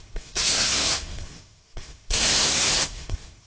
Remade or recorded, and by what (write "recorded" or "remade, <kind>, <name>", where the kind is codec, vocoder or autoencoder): remade, codec, SNAC